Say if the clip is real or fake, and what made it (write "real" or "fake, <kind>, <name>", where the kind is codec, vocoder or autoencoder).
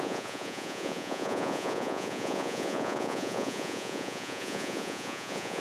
fake, vocoder, Vocos